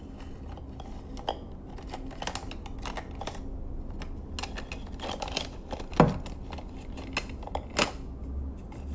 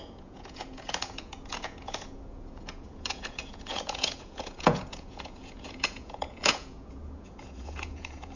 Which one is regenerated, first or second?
second